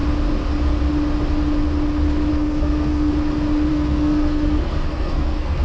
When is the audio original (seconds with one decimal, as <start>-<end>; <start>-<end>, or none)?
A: 0.0-2.3; 3.1-3.7